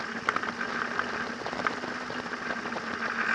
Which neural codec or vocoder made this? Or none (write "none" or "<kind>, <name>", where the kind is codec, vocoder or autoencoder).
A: none